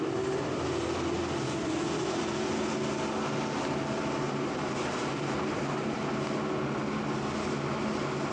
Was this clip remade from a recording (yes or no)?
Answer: no